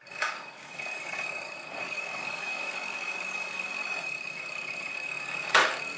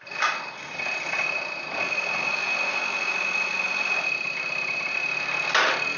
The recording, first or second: second